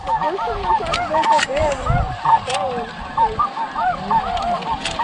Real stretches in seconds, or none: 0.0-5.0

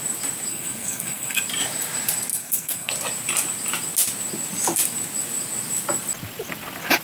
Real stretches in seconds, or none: 0.0-0.5; 1.4-2.3; 2.9-7.0

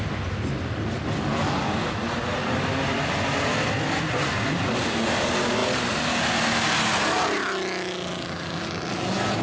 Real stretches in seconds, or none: 0.0-9.4

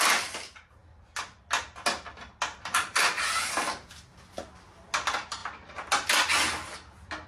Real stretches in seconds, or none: 0.0-7.3

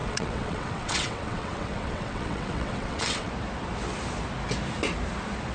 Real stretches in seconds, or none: 3.3-5.5

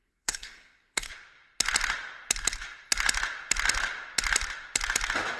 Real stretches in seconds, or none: 1.1-5.4